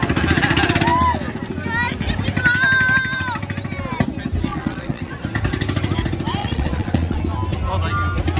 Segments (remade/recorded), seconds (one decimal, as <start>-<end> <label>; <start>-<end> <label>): 0.0-4.5 recorded; 4.5-5.1 remade; 5.1-6.4 recorded; 6.4-7.2 remade; 7.2-8.4 recorded